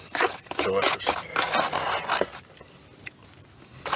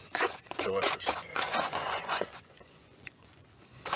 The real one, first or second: first